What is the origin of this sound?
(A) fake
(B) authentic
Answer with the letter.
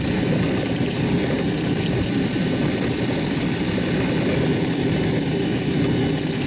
B